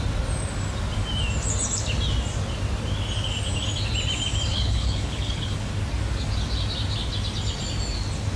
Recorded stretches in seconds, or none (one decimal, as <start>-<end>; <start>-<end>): 0.0-4.5; 5.7-8.4